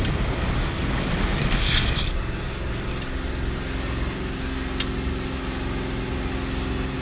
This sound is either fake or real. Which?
real